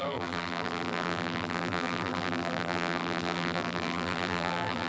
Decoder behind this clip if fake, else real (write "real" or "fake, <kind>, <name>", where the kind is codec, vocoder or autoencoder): fake, vocoder, BigVGAN v2